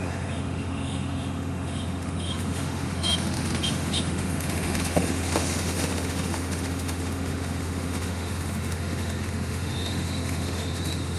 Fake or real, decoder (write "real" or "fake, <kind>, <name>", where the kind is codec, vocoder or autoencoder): fake, autoencoder, DAC-VAE